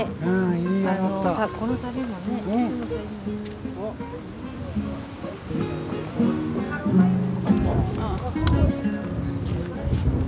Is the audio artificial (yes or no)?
no